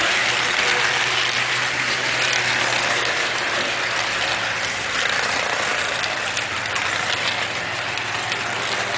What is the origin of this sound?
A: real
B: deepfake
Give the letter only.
A